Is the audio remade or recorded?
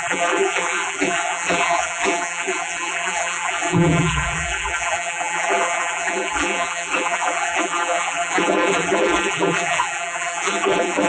remade